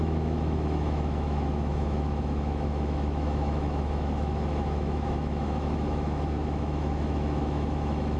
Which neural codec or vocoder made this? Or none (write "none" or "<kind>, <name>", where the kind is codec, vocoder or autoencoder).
autoencoder, DAC-VAE